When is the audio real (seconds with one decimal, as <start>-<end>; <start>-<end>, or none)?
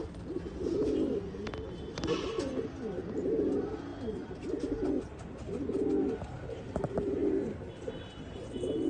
0.0-8.9